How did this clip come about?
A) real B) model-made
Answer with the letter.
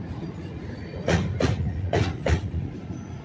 B